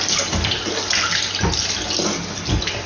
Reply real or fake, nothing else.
real